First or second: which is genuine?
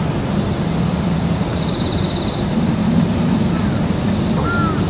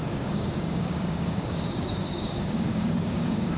first